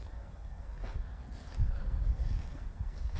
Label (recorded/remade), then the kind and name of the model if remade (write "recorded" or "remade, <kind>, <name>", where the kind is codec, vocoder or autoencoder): remade, codec, SNAC